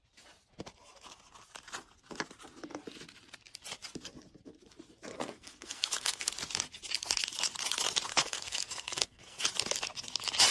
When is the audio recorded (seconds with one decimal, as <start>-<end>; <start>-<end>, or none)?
0.0-5.1; 6.3-8.1; 9.4-10.5